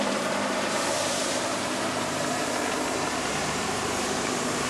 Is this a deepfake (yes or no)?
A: yes